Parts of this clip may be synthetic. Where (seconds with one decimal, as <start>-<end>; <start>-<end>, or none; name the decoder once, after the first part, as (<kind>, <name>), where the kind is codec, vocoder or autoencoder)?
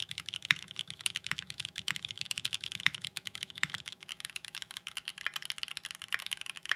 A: 0.0-5.1 (autoencoder, DAC-VAE); 6.2-6.8